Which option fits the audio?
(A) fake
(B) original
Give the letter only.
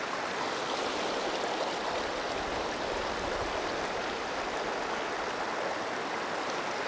B